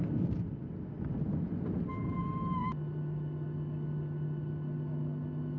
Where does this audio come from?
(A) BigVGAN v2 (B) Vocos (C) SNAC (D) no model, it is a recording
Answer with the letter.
D